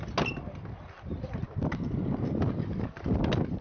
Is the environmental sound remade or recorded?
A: recorded